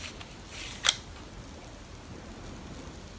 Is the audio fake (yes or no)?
no